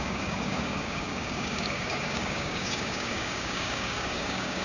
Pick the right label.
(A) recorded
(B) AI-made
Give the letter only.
B